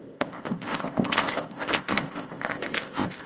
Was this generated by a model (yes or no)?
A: yes